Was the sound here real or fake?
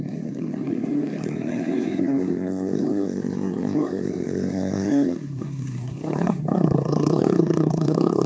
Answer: fake